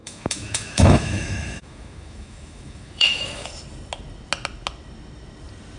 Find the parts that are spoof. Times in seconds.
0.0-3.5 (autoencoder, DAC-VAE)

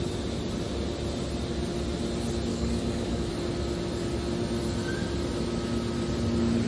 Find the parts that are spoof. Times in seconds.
2.5-3.3 (codec, DAC)

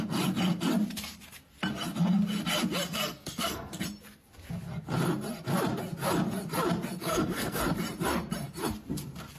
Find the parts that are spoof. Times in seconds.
2.9-3.8 (codec, SNAC); 7.0-7.6

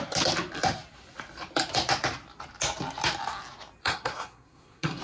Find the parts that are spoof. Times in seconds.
3.8-5.0 (codec, SNAC)

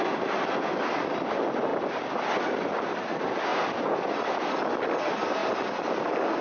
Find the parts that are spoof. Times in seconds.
none

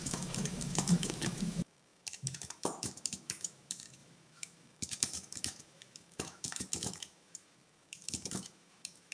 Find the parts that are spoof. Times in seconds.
0.0-9.1 (autoencoder, DAC-VAE)

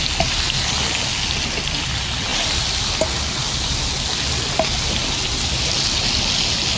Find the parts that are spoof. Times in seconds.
none